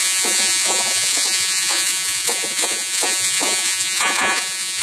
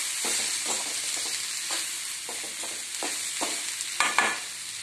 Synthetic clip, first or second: first